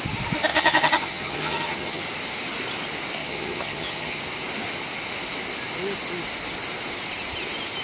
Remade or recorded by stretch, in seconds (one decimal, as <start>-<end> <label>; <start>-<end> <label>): 0.0-0.5 recorded; 0.5-2.0 remade; 2.0-3.2 recorded; 3.2-4.2 remade; 4.2-7.8 recorded